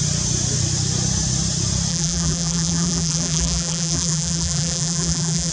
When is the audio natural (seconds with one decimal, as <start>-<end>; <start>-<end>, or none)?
0.0-1.9